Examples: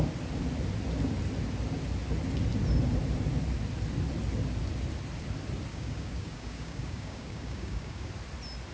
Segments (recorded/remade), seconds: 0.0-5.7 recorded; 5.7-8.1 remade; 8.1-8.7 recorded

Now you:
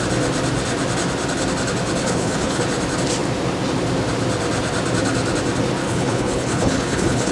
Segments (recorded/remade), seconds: 0.0-2.0 recorded; 2.0-2.6 remade; 2.6-5.8 recorded; 5.8-7.3 remade

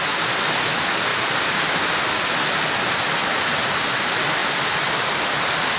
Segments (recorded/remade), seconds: 0.0-1.1 recorded; 1.1-4.0 remade; 4.0-5.8 recorded